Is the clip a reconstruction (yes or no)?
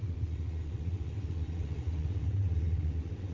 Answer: yes